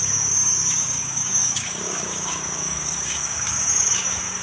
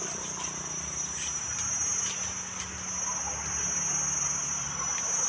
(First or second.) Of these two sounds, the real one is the second